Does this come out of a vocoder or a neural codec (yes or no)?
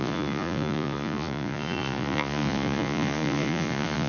yes